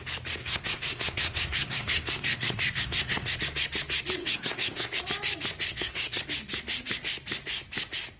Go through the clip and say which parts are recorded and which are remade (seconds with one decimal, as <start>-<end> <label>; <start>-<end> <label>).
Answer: 0.0-0.4 recorded; 0.4-3.4 remade; 3.4-4.2 recorded; 4.2-5.0 remade; 5.0-5.7 recorded; 5.7-6.2 remade; 6.2-8.2 recorded